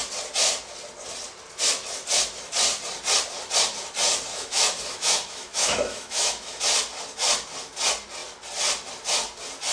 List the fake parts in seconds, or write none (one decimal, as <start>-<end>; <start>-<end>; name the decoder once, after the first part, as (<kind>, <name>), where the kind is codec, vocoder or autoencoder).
4.3-6.6 (autoencoder, DAC-VAE)